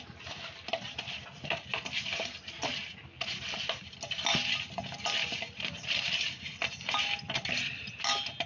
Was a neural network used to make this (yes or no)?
no